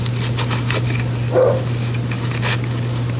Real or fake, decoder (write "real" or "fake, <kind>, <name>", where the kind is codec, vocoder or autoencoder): real